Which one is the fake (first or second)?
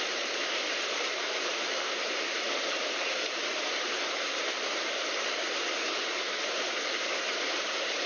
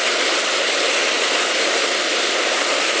first